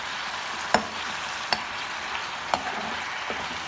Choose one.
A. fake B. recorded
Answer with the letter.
A